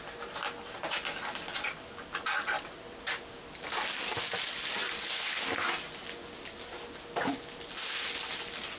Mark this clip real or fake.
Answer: real